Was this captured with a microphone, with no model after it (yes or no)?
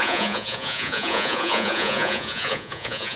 no